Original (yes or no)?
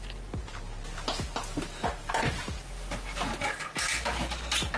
yes